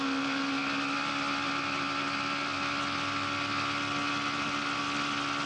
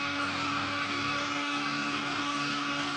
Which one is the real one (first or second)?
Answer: first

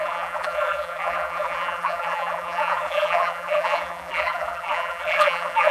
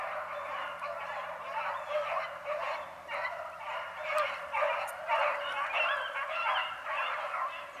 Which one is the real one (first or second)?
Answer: second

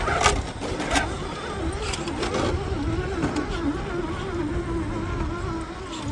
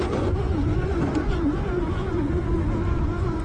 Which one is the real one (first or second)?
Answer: first